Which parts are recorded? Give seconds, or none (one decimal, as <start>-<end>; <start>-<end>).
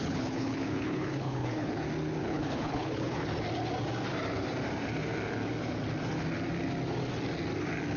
1.7-2.2; 3.3-8.0